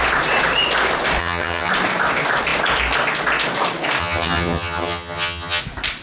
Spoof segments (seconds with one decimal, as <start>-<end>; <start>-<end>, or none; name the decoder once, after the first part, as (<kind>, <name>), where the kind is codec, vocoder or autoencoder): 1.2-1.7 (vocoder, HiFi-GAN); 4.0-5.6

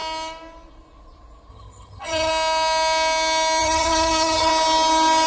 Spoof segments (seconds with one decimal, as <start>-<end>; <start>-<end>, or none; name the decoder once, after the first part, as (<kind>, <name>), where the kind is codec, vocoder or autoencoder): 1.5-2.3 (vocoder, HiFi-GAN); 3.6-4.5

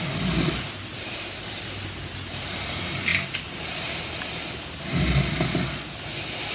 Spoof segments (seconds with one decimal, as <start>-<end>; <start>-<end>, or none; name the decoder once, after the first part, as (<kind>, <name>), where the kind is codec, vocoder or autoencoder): none